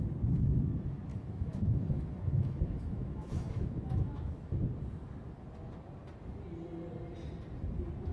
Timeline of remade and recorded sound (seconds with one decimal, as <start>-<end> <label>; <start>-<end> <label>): 0.0-1.1 recorded; 1.1-4.6 remade; 4.6-8.1 recorded